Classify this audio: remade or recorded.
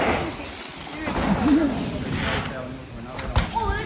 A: recorded